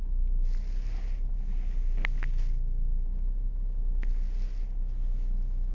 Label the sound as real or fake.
real